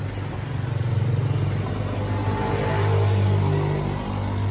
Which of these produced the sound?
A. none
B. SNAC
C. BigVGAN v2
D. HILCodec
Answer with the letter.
A